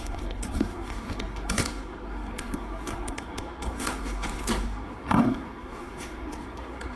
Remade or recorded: remade